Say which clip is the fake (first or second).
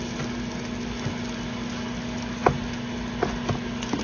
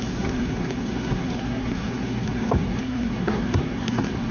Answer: second